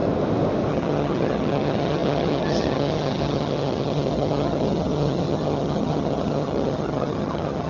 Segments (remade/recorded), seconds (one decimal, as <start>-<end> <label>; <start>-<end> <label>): 0.0-0.7 recorded; 0.7-7.7 remade